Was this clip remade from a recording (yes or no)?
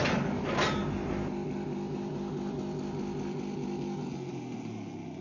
no